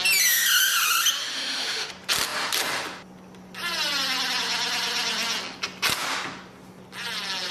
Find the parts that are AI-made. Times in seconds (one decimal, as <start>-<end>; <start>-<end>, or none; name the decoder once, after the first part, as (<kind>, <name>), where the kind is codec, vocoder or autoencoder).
1.2-1.9 (autoencoder, DAC-VAE)